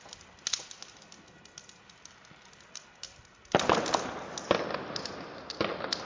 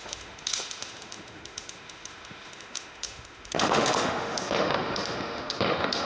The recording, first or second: first